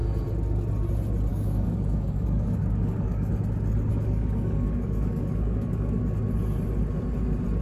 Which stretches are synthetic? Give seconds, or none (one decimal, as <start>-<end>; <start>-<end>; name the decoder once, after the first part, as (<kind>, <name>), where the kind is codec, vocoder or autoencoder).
1.3-3.3 (codec, DAC); 3.9-6.0